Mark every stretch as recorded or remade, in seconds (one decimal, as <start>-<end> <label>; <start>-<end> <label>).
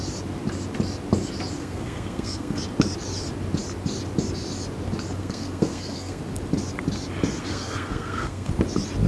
0.0-1.6 recorded; 1.6-2.6 remade; 2.6-5.2 recorded; 5.2-6.2 remade; 6.2-7.4 recorded; 7.4-8.5 remade; 8.5-9.1 recorded